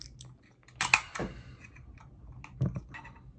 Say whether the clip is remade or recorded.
recorded